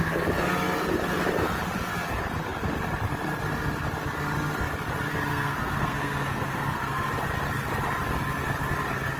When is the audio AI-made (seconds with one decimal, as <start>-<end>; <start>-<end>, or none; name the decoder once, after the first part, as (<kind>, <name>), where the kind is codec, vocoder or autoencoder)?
5.3-7.1 (codec, SNAC)